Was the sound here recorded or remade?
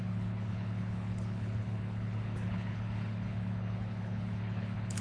remade